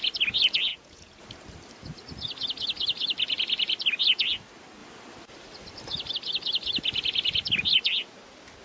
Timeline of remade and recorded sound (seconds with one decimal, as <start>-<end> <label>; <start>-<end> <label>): 0.0-0.7 recorded; 0.7-1.2 remade; 1.2-8.6 recorded